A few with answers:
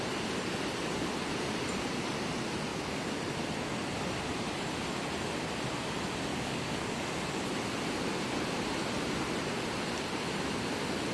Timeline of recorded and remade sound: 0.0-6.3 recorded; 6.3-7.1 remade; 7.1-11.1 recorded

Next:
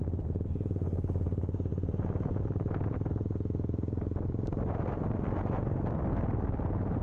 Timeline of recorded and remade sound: 0.0-7.0 recorded

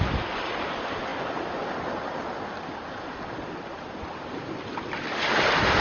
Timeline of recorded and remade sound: 0.0-5.8 recorded